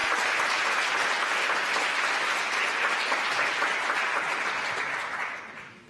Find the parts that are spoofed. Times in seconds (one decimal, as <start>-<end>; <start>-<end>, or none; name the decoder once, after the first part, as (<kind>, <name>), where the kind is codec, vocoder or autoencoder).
none